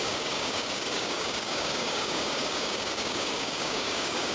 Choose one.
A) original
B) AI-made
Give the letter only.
B